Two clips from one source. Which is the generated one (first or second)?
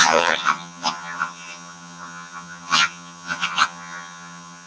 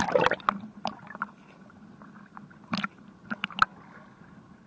first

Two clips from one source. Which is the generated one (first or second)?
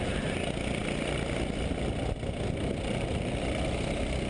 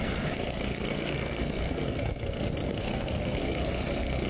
second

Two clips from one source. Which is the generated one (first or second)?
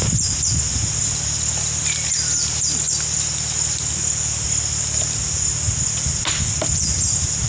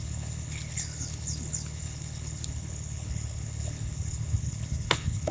second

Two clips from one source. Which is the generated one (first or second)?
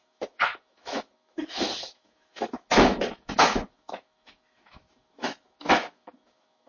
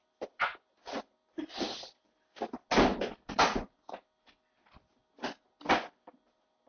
first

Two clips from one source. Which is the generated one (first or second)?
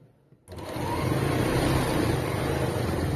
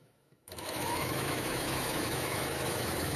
second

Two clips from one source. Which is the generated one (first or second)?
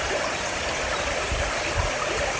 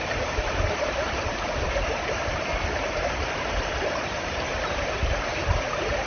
second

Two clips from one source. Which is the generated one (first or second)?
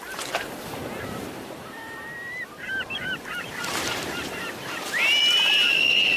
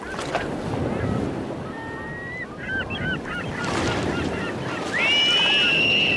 first